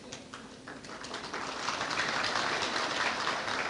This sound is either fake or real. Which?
fake